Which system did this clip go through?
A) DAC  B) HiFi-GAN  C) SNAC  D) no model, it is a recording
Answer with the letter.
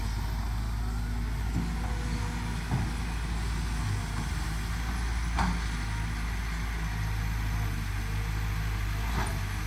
D